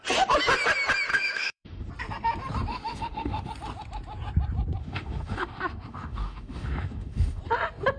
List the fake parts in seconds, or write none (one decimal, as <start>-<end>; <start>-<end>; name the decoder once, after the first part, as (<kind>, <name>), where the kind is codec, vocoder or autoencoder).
1.1-1.9 (autoencoder, DAC-VAE); 2.7-3.5; 4.8-7.4